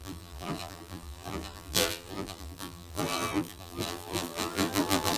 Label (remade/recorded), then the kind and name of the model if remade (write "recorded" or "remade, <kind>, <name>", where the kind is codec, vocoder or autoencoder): remade, vocoder, BigVGAN v2